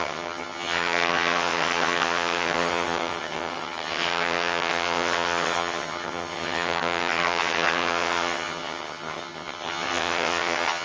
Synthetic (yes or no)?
yes